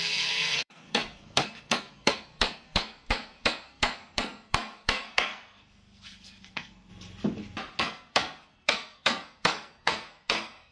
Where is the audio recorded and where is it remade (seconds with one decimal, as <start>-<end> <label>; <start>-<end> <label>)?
0.0-6.9 remade; 6.9-7.8 recorded; 7.8-10.7 remade